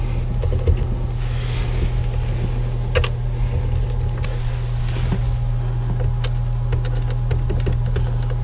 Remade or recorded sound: recorded